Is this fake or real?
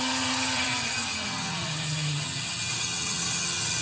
fake